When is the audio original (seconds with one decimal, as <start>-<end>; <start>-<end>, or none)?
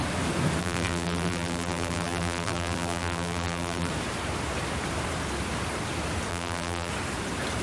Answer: 0.0-0.6; 3.9-6.3; 6.9-7.6